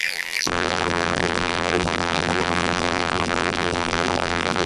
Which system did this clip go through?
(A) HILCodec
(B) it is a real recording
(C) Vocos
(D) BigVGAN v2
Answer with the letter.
D